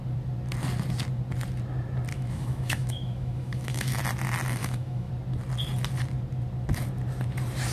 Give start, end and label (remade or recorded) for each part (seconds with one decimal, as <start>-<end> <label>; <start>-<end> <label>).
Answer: 0.0-2.1 recorded; 2.1-4.0 remade; 4.0-4.6 recorded; 4.6-5.1 remade; 5.1-7.7 recorded